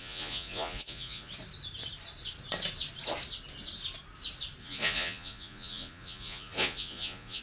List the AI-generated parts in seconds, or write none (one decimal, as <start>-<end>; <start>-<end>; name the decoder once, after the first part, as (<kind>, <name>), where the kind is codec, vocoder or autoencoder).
0.0-1.3 (vocoder, Vocos); 4.6-7.4